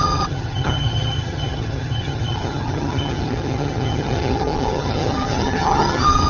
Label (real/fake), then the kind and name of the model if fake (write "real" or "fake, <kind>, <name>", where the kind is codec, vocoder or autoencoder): fake, vocoder, HiFi-GAN